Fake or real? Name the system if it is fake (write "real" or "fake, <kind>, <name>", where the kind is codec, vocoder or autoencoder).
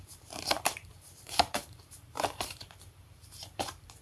fake, vocoder, BigVGAN v2